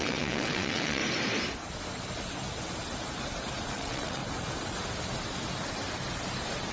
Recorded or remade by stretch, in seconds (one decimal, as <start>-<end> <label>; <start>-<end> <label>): 0.0-1.0 remade; 1.0-3.7 recorded; 3.7-4.2 remade; 4.2-6.7 recorded